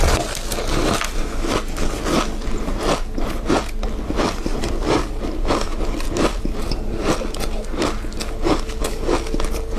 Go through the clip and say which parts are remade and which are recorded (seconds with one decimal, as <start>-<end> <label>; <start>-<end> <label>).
0.0-4.5 recorded; 4.5-7.4 remade; 7.4-9.8 recorded